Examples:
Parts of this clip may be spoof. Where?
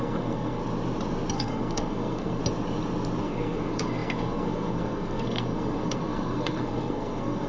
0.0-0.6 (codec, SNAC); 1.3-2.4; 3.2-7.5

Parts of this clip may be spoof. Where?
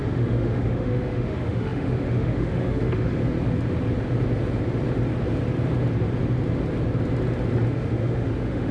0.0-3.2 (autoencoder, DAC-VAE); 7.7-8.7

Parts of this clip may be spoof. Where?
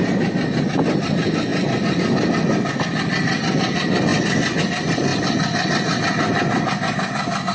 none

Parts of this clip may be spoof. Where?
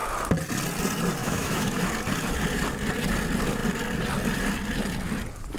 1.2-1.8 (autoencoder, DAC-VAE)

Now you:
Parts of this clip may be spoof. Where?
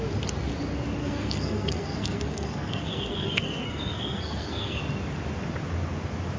1.0-4.8 (codec, SNAC)